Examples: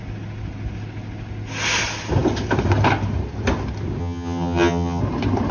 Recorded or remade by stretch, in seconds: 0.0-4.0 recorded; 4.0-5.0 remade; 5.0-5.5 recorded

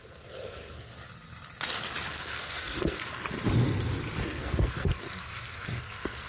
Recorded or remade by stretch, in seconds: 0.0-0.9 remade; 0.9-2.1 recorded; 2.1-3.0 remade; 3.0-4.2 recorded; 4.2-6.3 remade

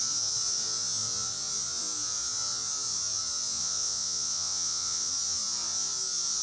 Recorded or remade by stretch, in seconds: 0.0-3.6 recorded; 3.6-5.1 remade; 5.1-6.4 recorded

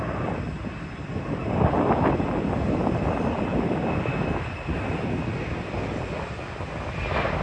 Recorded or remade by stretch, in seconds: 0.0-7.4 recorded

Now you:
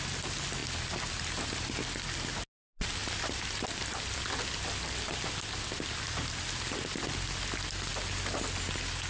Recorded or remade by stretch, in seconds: 0.0-3.0 recorded; 3.0-4.2 remade; 4.2-9.1 recorded

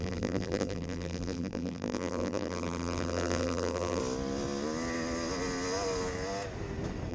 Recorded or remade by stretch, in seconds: 0.0-4.0 remade; 4.0-7.1 recorded

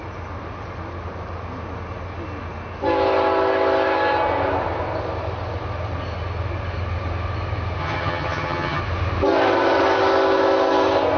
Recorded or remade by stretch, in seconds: 0.0-7.8 recorded; 7.8-8.8 remade; 8.8-11.2 recorded

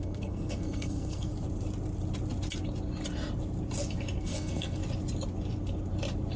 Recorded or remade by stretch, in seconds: 0.0-1.3 remade; 1.3-4.2 recorded; 4.2-4.8 remade; 4.8-6.4 recorded